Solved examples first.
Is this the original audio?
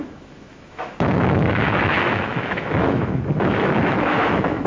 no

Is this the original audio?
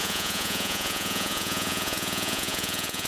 no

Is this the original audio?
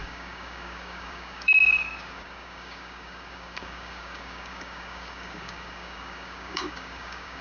no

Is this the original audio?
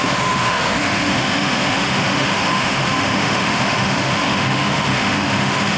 no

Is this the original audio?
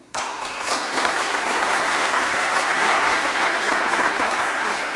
no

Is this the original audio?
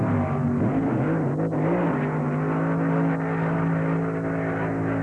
yes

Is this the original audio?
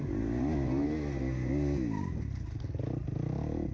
yes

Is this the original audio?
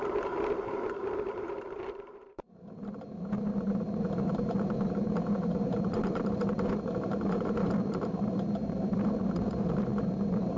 no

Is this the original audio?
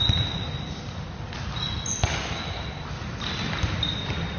yes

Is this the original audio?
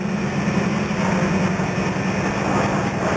yes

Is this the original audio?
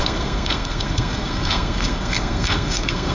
no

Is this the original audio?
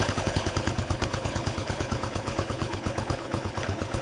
no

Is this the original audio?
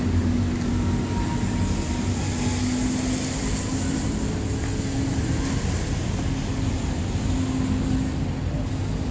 yes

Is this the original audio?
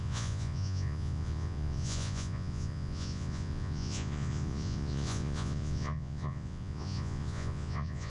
no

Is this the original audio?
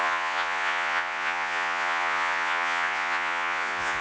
no